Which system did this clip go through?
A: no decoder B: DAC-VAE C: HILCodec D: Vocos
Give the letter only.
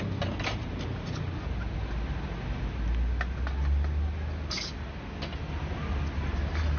A